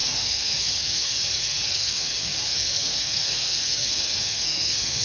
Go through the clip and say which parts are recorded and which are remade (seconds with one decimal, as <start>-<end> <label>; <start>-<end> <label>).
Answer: 0.0-5.0 remade